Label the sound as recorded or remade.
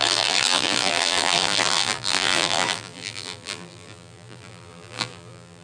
remade